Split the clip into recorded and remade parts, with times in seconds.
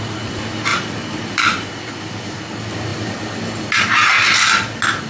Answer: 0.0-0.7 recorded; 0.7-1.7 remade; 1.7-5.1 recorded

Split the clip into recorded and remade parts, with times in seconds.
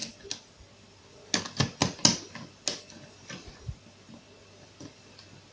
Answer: 0.0-5.5 recorded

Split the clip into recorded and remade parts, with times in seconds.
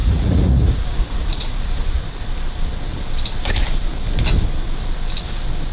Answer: 0.0-2.0 remade; 2.0-5.7 recorded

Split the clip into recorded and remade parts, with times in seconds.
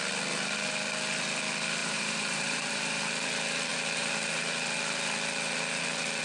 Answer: 0.0-1.8 recorded; 1.8-3.0 remade; 3.0-6.2 recorded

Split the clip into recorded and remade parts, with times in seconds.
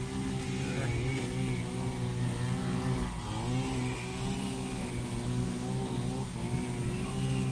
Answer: 0.0-7.5 recorded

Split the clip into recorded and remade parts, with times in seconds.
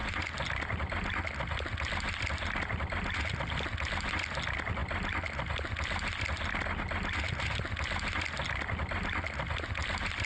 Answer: 0.0-10.3 recorded